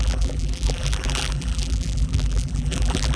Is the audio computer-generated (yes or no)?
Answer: yes